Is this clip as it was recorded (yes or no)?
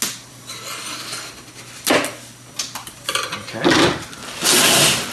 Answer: yes